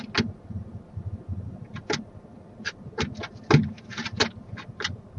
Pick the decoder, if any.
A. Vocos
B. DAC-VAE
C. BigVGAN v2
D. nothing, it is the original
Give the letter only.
D